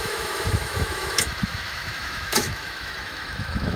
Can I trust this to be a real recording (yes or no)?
no